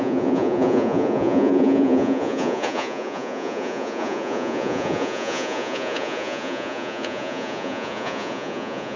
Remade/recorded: remade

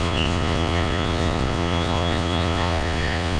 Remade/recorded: remade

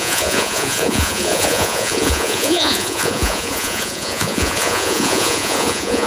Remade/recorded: remade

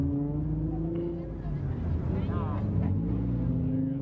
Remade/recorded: recorded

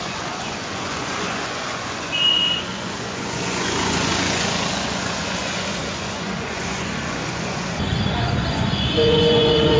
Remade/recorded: remade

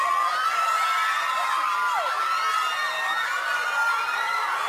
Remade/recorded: recorded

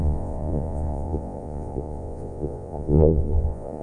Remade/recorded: remade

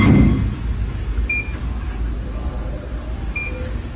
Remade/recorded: recorded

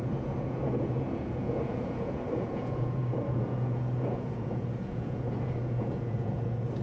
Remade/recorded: remade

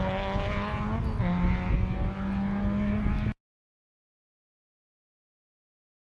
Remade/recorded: recorded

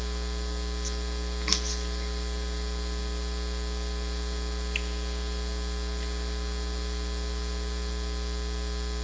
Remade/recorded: recorded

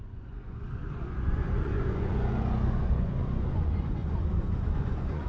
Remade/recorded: remade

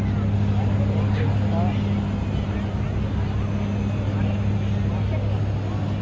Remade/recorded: recorded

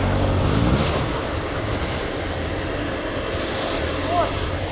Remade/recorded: recorded